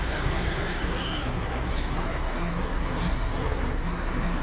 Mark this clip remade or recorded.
remade